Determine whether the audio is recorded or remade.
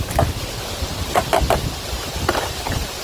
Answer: recorded